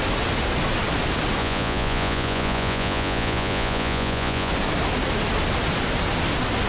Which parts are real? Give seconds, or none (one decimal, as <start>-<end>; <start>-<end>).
0.0-1.4; 4.5-6.7